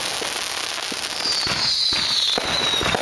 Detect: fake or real real